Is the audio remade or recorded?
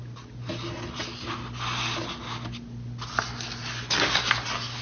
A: recorded